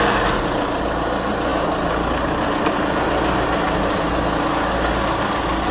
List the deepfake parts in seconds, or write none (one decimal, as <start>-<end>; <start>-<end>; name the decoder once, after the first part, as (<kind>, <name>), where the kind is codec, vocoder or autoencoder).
none